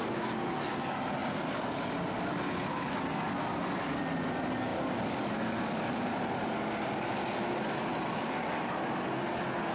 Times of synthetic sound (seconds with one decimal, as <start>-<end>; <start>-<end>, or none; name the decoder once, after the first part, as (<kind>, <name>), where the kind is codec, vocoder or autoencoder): 1.2-1.7 (vocoder, BigVGAN v2); 4.7-6.4; 7.9-8.5